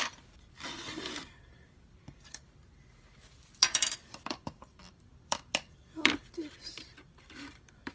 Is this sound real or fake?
fake